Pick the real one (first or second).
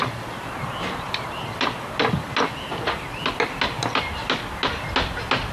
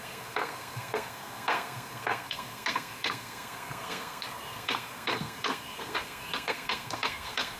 first